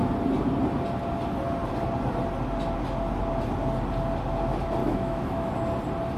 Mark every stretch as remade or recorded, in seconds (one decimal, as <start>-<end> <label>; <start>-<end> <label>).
0.0-4.8 recorded; 4.8-5.5 remade; 5.5-6.2 recorded